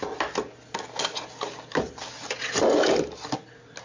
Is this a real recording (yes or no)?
yes